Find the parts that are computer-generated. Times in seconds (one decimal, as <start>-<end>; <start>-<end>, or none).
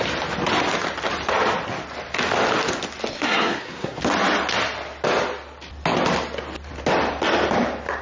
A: 3.1-4.0